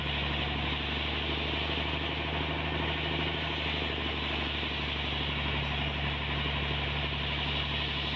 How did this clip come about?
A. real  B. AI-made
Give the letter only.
A